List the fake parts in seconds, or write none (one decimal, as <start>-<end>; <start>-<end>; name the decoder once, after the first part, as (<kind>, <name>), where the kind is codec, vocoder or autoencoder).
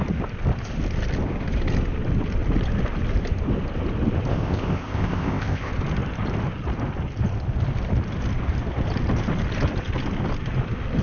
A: 4.3-5.7 (codec, ZipCodec)